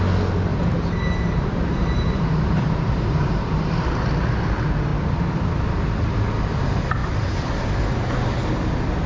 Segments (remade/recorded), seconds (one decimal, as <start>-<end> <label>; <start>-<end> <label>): 0.0-0.5 recorded; 0.5-4.1 remade; 4.1-7.0 recorded; 7.0-7.6 remade; 7.6-9.1 recorded